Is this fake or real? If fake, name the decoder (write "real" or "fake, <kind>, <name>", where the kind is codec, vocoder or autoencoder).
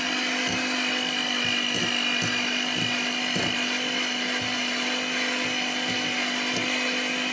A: real